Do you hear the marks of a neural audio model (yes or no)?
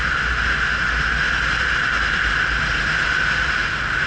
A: no